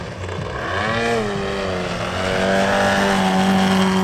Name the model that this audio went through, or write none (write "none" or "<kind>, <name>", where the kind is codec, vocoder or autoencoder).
none